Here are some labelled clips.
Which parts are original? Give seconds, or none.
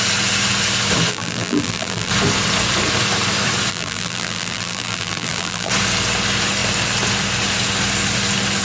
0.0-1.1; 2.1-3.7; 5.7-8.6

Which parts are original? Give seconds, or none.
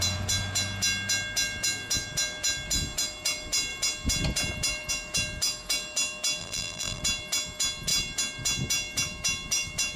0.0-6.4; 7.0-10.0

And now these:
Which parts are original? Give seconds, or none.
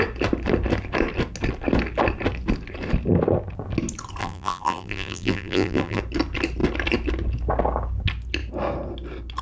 0.0-4.2; 6.0-9.4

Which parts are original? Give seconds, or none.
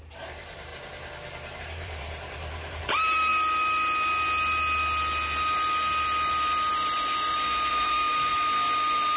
0.7-1.6; 3.3-7.7; 8.3-9.2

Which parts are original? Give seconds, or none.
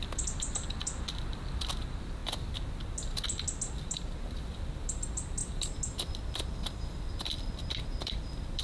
2.2-3.9; 5.4-6.1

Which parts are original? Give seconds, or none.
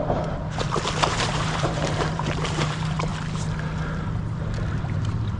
0.4-1.1; 3.1-4.8